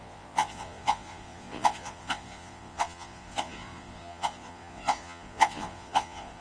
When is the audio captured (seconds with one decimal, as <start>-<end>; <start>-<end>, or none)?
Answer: none